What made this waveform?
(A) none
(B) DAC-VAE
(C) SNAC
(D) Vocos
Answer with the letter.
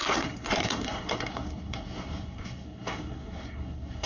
C